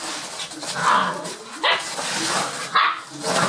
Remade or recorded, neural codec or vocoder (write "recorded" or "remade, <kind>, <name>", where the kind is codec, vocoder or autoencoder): recorded